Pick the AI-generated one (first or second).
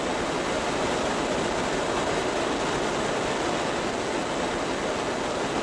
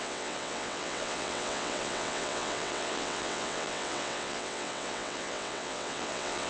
second